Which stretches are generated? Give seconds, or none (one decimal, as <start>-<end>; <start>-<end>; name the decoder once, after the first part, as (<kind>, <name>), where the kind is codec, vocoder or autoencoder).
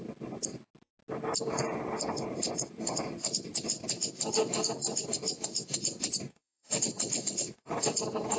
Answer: 6.3-8.0 (vocoder, WaveNeXt)